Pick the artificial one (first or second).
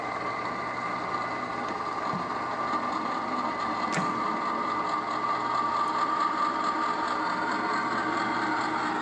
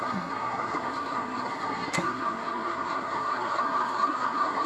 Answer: second